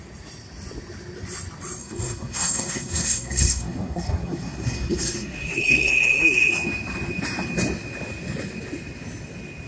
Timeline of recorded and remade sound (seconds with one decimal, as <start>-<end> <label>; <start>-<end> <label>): 0.0-1.8 recorded; 1.8-6.5 remade; 6.5-9.7 recorded